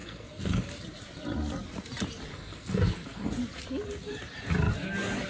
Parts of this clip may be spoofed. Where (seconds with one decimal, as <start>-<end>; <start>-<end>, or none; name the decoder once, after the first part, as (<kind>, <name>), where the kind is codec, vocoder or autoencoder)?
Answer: 0.0-0.8 (codec, SNAC); 2.3-3.3